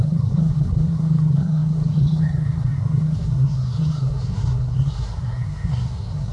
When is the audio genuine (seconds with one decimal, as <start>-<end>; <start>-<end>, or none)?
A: none